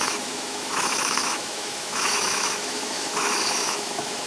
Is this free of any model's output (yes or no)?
no